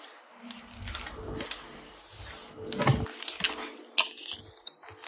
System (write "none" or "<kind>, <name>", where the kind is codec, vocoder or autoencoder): none